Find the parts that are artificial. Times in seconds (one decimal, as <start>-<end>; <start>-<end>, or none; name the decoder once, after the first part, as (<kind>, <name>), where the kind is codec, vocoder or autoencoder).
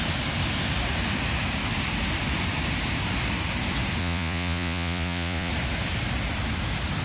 4.0-5.5 (vocoder, Vocos)